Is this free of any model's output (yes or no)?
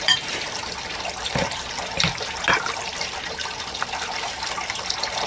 yes